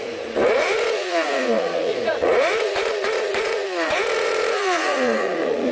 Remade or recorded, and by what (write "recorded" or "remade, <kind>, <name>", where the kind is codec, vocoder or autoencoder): remade, vocoder, Vocos